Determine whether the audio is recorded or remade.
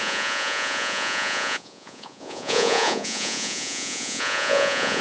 remade